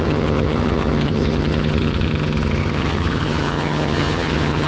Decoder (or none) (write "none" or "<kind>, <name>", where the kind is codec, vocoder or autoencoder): vocoder, HiFi-GAN